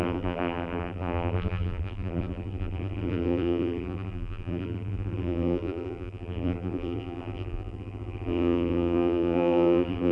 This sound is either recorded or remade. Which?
remade